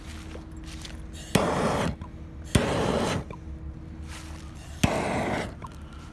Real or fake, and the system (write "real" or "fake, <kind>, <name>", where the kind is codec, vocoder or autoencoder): real